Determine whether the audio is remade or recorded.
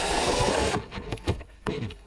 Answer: remade